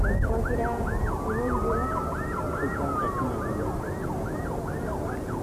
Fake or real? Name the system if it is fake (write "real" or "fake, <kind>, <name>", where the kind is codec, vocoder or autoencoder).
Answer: real